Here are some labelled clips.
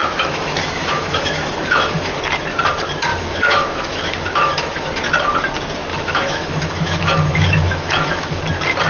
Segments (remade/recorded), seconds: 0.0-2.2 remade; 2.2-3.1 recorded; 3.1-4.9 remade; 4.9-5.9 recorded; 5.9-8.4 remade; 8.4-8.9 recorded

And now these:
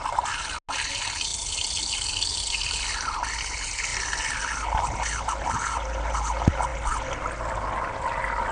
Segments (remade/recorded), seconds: 0.0-8.5 recorded

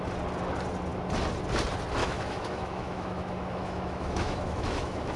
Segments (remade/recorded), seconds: 0.0-2.0 recorded; 2.0-5.2 remade

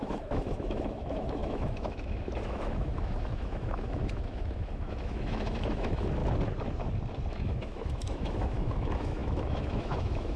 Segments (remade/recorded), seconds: 0.0-6.2 remade; 6.2-7.3 recorded; 7.3-10.4 remade